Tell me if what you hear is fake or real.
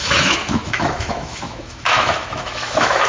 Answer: fake